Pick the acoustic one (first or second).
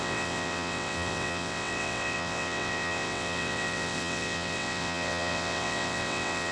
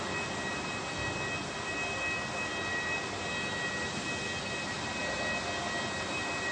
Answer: second